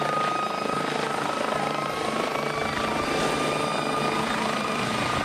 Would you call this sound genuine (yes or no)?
yes